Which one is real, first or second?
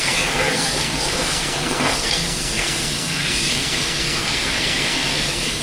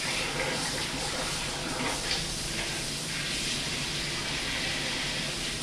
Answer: second